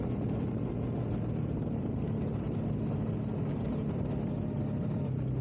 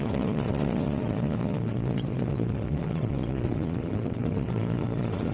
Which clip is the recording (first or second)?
first